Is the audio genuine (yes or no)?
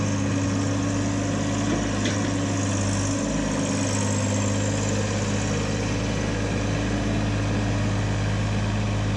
yes